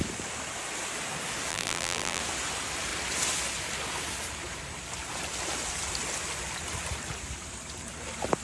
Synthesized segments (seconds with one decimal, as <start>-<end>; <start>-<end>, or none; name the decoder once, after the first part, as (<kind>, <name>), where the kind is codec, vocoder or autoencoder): 1.5-2.2 (vocoder, BigVGAN v2)